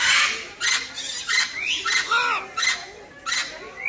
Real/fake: real